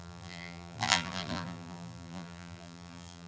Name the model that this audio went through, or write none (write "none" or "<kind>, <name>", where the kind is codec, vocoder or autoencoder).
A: vocoder, BigVGAN v2